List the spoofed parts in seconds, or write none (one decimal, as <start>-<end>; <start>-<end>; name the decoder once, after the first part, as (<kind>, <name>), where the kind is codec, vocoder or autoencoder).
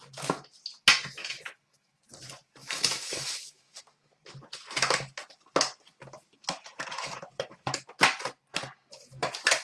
1.2-2.0 (autoencoder, DAC-VAE); 2.6-3.8